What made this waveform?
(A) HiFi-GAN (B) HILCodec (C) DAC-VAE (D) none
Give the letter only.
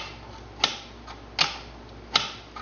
D